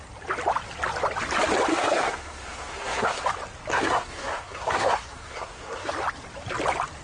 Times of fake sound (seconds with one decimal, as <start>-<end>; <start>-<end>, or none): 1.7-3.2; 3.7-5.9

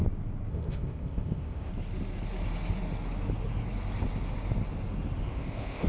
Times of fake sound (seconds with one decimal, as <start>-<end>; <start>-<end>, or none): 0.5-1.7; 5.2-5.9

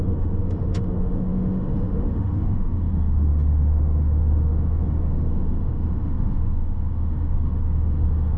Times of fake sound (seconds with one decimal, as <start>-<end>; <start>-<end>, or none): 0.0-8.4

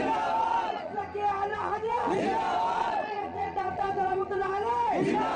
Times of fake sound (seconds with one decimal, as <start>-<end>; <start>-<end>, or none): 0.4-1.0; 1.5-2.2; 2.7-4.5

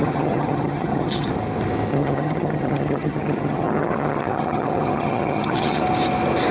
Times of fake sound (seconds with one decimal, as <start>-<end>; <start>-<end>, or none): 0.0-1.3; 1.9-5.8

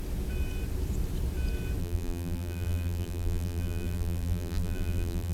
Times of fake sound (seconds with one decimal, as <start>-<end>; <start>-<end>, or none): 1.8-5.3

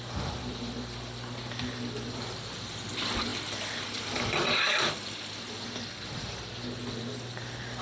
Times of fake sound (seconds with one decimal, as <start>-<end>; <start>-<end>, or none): none